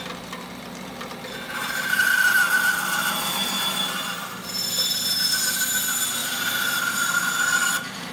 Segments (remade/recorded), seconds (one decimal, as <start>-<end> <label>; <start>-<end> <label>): 0.0-6.2 recorded; 6.2-7.3 remade; 7.3-8.1 recorded